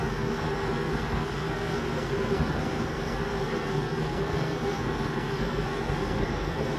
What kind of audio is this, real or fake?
fake